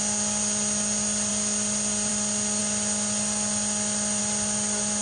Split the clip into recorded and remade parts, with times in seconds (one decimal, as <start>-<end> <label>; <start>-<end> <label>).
0.0-5.0 recorded